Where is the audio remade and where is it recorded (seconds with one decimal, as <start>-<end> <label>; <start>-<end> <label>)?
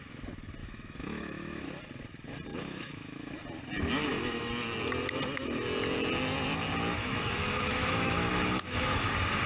0.0-0.6 recorded; 0.6-1.7 remade; 1.7-2.5 recorded; 2.5-3.3 remade; 3.3-4.0 recorded; 4.0-4.5 remade; 4.5-7.0 recorded; 7.0-9.1 remade; 9.1-9.5 recorded